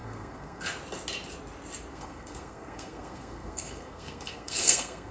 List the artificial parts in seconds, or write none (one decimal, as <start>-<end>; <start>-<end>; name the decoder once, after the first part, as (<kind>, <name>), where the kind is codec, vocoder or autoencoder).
0.0-0.6 (codec, SNAC); 1.9-5.1